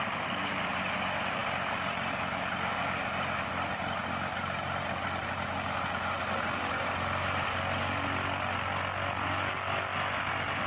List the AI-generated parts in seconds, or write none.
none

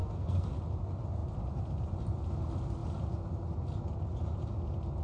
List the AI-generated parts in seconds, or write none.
0.0-0.6 (codec, SNAC)

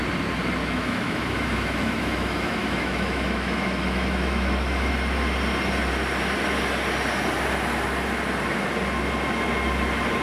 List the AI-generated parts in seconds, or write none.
0.6-4.9 (autoencoder, DAC-VAE)

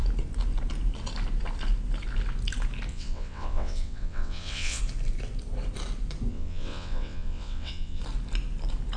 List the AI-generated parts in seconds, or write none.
2.9-4.8 (vocoder, WaveNeXt); 6.3-8.0

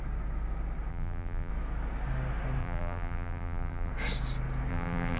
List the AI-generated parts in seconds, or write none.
0.9-1.5 (vocoder, BigVGAN v2); 2.6-3.9; 4.7-5.2

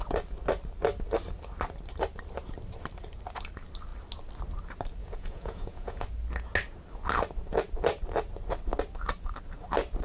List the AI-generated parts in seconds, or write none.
5.0-6.0 (vocoder, Vocos)